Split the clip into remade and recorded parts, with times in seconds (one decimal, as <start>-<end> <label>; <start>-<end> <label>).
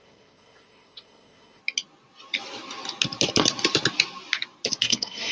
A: 0.0-1.6 remade; 1.6-4.8 recorded; 4.8-5.3 remade